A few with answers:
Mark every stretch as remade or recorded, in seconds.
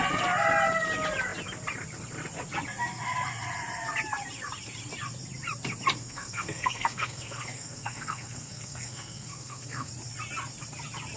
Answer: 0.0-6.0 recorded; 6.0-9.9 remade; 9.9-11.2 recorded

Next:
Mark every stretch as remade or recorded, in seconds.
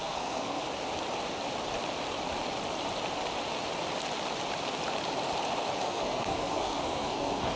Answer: 0.0-0.6 remade; 0.6-5.8 recorded; 5.8-7.6 remade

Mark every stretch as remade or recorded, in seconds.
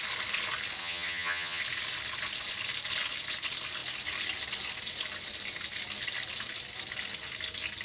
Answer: 0.0-0.8 recorded; 0.8-1.6 remade; 1.6-7.8 recorded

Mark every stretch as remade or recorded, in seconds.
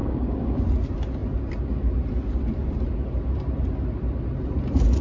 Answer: 0.0-0.6 remade; 0.6-5.0 recorded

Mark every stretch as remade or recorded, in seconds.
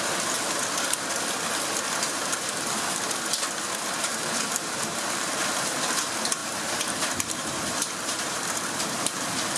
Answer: 0.0-4.1 recorded; 4.1-5.4 remade; 5.4-6.4 recorded; 6.4-9.6 remade